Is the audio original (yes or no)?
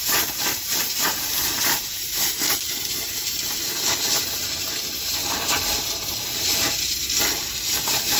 no